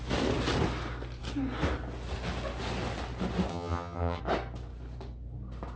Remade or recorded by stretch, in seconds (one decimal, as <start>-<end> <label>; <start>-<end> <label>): 0.0-3.5 recorded; 3.5-4.2 remade; 4.2-5.8 recorded

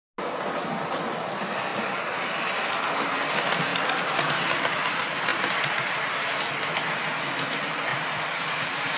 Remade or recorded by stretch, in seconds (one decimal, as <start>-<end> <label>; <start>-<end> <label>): 0.0-9.0 recorded

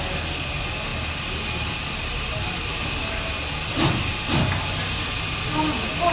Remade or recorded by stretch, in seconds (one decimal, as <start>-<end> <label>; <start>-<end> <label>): 0.0-6.1 recorded